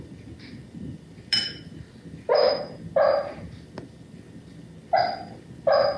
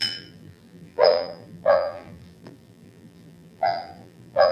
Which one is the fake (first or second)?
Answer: second